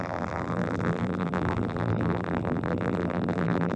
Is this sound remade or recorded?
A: remade